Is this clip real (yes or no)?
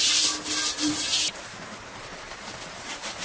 yes